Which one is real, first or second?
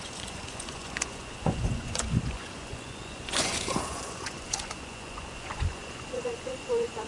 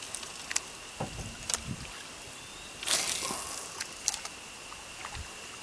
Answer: second